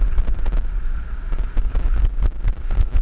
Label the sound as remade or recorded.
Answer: recorded